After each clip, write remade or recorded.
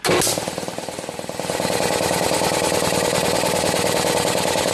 recorded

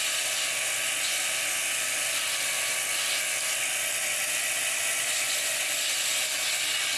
recorded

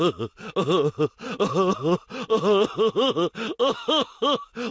recorded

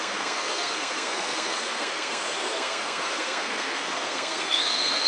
remade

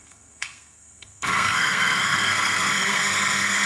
remade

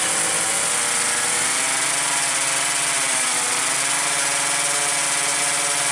recorded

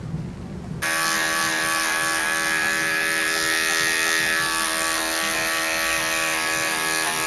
recorded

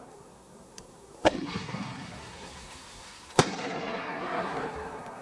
remade